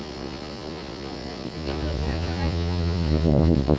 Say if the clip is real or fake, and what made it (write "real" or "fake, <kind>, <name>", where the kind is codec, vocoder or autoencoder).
fake, vocoder, Vocos